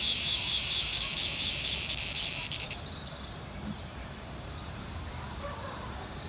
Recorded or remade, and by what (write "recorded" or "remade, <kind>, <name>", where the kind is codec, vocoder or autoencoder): remade, vocoder, BigVGAN v2